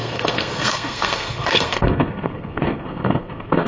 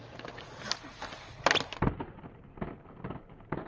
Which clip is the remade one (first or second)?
first